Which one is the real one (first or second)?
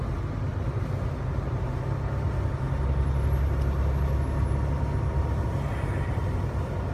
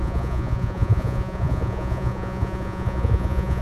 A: first